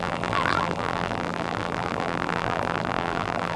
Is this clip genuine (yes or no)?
no